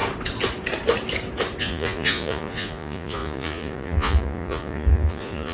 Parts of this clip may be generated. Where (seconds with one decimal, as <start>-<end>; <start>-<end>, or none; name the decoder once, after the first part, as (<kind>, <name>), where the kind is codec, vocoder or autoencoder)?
1.6-5.5 (vocoder, Vocos)